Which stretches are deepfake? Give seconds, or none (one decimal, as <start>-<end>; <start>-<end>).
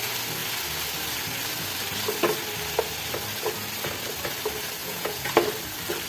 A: 4.8-5.3